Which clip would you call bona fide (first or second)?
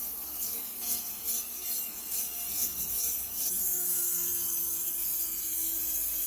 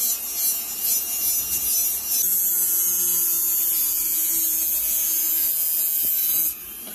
second